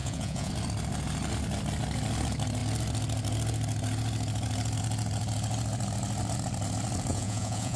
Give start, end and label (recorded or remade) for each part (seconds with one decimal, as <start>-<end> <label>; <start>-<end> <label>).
0.0-0.5 remade; 0.5-7.1 recorded; 7.1-7.8 remade

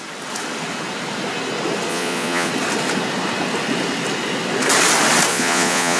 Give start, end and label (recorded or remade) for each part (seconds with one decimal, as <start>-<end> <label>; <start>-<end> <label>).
0.0-1.9 recorded; 1.9-2.5 remade; 2.5-5.3 recorded; 5.3-6.0 remade

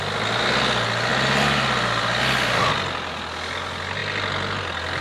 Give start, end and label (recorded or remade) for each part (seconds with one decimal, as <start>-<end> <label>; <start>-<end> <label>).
0.0-5.0 recorded

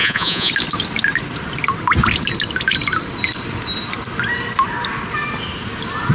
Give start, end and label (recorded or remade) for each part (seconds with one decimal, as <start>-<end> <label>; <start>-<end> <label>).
0.0-0.5 remade; 0.5-6.1 recorded

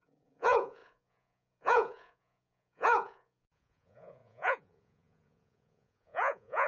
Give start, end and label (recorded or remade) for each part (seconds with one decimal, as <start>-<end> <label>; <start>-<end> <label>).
0.0-6.7 remade